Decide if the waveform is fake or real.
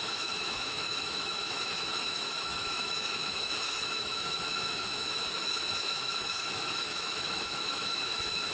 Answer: fake